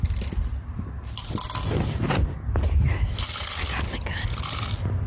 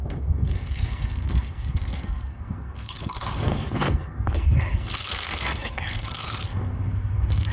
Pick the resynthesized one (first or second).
second